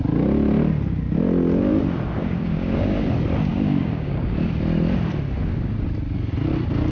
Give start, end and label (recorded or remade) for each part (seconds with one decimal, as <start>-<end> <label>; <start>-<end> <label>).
0.0-2.2 recorded; 2.2-3.1 remade; 3.1-3.5 recorded; 3.5-4.3 remade; 4.3-6.9 recorded